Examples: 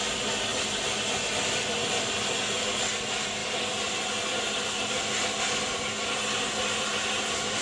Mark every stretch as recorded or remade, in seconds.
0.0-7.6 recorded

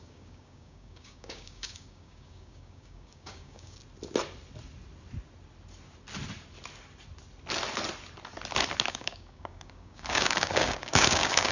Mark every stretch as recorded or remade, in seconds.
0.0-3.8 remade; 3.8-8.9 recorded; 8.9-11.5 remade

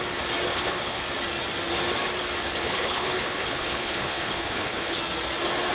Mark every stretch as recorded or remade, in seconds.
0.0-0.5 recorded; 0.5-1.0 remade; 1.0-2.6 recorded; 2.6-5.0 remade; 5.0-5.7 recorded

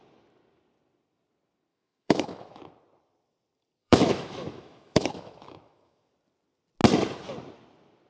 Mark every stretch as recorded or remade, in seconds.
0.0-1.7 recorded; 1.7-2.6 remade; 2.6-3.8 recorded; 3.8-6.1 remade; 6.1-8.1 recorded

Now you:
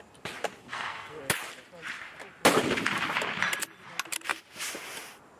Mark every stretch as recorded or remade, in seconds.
0.0-0.6 recorded; 0.6-1.2 remade; 1.2-5.4 recorded

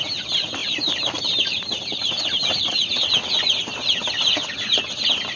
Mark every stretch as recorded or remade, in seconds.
0.0-0.6 recorded; 0.6-3.1 remade; 3.1-5.4 recorded

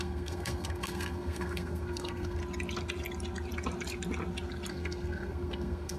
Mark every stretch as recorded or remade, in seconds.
0.0-2.4 remade; 2.4-4.7 recorded; 4.7-6.0 remade